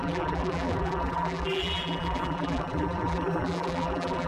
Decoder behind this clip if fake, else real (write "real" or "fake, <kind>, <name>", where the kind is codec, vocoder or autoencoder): fake, vocoder, BigVGAN v2